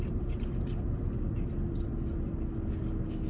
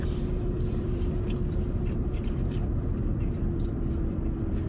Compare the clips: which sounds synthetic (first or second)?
second